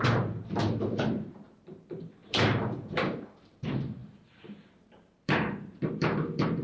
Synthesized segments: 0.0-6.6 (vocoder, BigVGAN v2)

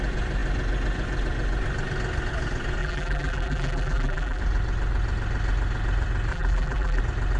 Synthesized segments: 2.8-4.4 (vocoder, BigVGAN v2); 6.3-7.0

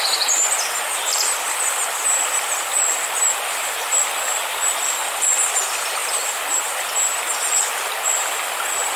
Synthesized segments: none

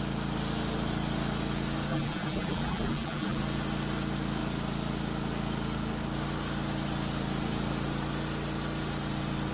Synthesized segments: 1.9-3.4 (vocoder, BigVGAN v2)

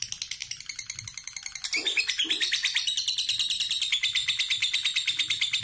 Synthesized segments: 0.4-1.0 (vocoder, BigVGAN v2); 1.8-3.6; 4.2-5.6

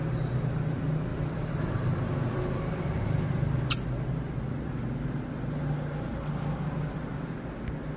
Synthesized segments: 1.1-3.0 (vocoder, BigVGAN v2)

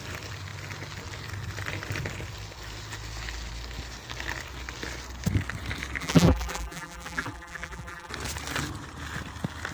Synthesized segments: 6.0-8.1 (vocoder, BigVGAN v2)